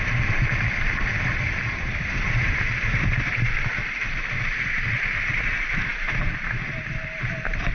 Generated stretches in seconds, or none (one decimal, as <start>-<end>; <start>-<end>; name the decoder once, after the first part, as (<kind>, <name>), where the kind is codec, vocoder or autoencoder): none